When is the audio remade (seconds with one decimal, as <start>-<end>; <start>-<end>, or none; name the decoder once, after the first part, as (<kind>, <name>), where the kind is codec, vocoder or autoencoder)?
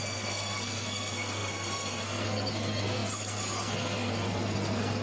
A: 0.0-5.0 (codec, SNAC)